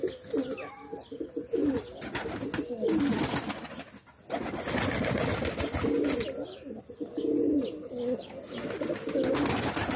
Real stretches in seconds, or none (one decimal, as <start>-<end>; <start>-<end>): 0.0-10.0

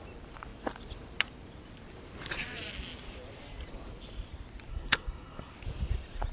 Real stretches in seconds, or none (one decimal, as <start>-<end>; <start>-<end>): 0.0-4.7; 5.5-6.3

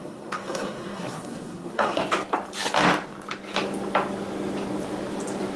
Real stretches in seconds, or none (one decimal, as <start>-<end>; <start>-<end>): 2.0-5.6

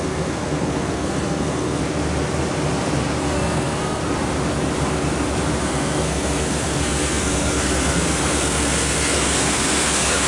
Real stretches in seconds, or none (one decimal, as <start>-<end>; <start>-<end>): 1.8-3.2; 4.0-5.6

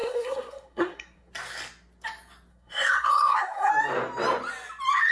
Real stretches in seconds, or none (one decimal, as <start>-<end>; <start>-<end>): 1.3-2.5; 3.7-5.1

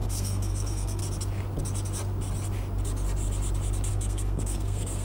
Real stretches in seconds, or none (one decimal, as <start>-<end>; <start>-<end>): 1.0-3.9